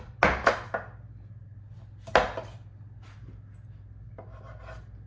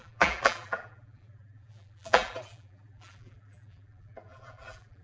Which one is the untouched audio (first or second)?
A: first